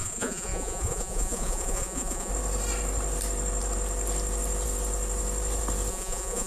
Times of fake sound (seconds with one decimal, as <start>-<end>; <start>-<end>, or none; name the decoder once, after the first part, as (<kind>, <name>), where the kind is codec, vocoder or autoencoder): 0.0-2.3 (vocoder, Vocos); 5.9-6.5